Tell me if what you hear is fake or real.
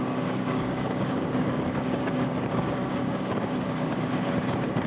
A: fake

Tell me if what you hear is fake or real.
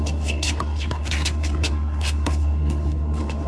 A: fake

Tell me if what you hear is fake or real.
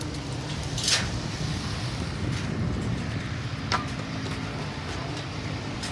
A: real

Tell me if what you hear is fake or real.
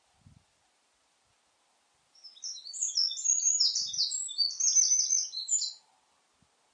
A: real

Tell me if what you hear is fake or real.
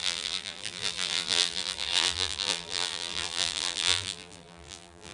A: fake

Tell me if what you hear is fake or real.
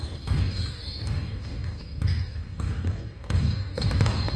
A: fake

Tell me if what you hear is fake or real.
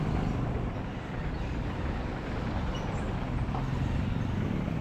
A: real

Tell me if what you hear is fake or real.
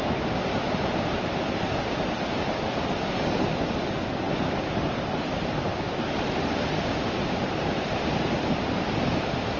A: real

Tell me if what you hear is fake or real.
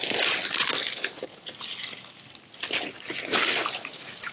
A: real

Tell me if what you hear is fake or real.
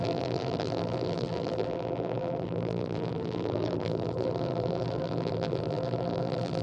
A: fake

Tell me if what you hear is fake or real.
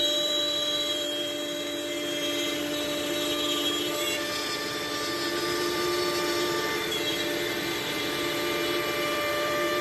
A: fake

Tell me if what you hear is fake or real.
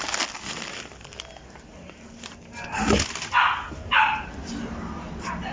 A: real